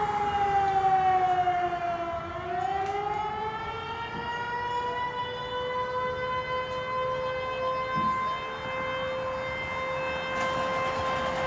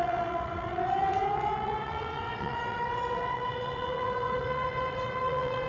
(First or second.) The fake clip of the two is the second